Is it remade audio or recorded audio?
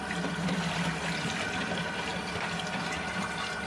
recorded